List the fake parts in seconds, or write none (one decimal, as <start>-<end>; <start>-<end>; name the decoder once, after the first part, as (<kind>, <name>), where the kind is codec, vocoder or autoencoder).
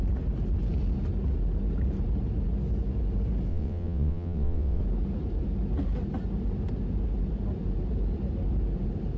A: 3.5-4.8 (vocoder, WaveNeXt)